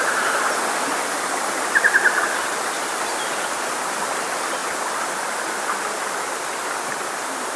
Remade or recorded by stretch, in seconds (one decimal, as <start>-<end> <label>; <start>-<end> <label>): 0.0-7.6 recorded